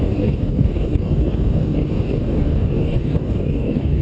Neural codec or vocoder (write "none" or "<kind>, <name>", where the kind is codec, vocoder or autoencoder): codec, DAC